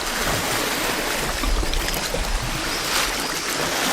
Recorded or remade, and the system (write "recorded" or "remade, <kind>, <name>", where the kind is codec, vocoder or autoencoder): recorded